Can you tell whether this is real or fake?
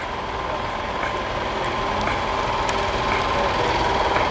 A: real